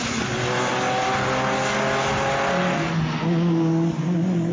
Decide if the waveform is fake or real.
real